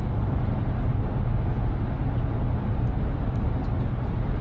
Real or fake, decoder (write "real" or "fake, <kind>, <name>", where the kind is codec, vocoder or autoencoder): real